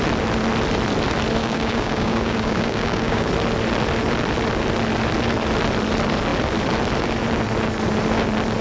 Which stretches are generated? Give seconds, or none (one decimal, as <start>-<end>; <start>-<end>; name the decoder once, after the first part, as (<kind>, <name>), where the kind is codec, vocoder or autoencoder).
1.4-3.3 (codec, DAC)